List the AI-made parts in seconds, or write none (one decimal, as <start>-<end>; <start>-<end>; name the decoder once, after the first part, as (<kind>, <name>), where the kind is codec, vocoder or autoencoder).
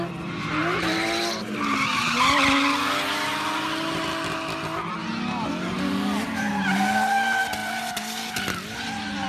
none